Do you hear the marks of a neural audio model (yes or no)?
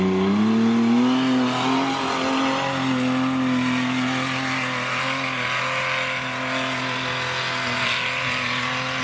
no